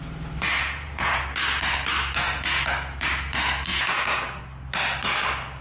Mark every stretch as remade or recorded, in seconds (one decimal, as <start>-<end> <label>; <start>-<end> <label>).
0.0-0.6 recorded; 0.6-1.2 remade; 1.2-3.7 recorded; 3.7-4.4 remade; 4.4-5.6 recorded